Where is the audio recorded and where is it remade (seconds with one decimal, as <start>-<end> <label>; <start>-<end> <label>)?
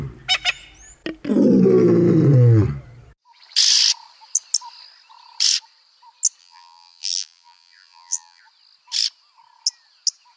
0.0-6.4 recorded; 6.4-8.4 remade; 8.4-10.4 recorded